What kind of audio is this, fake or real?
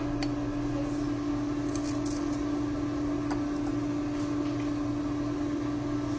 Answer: real